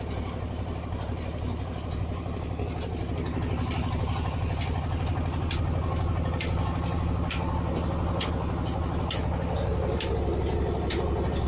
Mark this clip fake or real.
real